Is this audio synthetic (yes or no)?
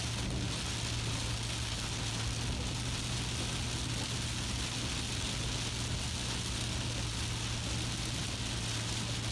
no